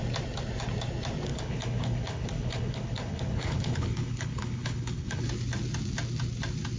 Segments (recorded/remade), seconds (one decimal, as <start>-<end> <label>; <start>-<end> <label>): 0.0-1.3 recorded; 1.3-5.2 remade; 5.2-6.8 recorded